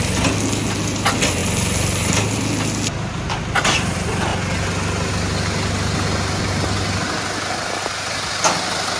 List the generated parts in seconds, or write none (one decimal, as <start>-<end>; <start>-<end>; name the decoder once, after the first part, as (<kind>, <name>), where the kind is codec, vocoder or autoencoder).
none